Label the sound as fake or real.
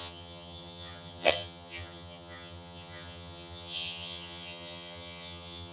fake